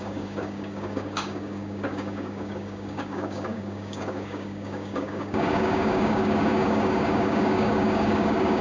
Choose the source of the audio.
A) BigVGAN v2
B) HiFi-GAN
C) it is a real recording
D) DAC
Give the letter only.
D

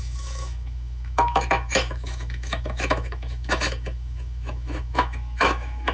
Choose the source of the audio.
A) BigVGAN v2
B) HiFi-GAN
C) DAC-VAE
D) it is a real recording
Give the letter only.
C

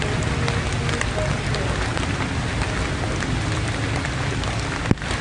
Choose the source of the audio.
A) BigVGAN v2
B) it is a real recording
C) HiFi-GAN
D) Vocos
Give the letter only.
B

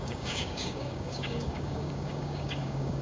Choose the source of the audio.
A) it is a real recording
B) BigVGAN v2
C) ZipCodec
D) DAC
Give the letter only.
D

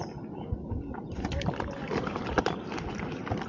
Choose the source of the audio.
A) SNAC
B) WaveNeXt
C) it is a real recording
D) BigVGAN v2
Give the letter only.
C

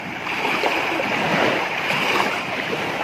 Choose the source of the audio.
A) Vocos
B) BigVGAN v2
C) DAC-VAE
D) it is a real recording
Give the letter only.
B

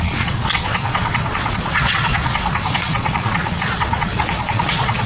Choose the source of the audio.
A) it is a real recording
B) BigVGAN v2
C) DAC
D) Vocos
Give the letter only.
D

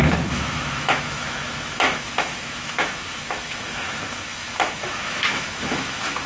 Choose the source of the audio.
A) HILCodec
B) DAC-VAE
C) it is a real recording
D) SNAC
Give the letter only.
B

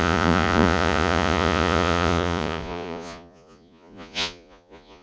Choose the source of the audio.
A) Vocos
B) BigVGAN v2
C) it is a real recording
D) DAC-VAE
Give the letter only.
A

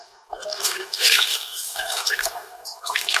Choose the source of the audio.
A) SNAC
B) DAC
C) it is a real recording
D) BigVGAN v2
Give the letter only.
B